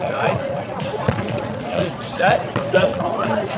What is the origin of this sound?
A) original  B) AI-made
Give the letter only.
B